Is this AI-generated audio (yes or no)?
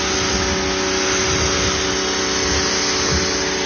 no